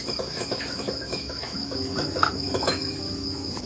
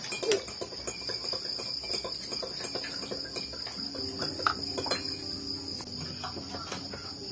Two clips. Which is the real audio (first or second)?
second